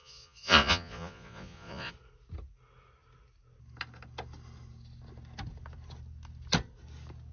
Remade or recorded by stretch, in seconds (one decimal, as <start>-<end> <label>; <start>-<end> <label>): 0.0-1.9 remade; 1.9-7.3 recorded